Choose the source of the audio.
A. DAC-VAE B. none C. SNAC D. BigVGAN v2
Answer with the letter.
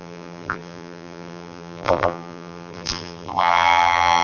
D